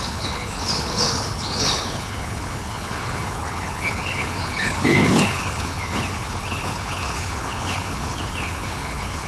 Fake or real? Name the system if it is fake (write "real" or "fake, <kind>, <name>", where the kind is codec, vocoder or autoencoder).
fake, codec, HILCodec